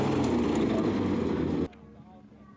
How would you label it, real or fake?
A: real